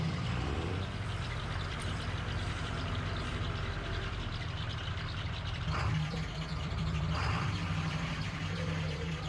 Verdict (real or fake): fake